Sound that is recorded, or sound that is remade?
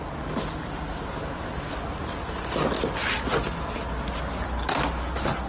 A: recorded